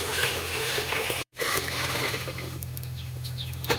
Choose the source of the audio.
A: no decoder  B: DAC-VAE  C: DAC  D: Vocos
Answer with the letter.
B